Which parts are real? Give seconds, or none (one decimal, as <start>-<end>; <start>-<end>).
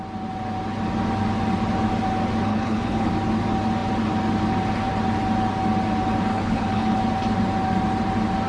0.0-2.5; 3.1-6.3; 7.0-8.5